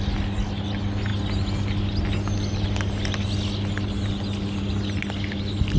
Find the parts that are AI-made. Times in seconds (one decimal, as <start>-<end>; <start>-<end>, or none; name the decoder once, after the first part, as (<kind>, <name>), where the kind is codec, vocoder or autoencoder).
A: none